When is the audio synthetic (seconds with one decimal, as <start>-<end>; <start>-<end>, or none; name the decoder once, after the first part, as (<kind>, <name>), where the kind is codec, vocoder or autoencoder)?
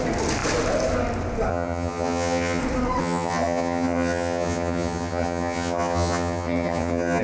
1.5-2.6 (vocoder, HiFi-GAN); 3.0-7.2